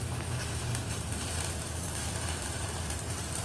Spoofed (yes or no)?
yes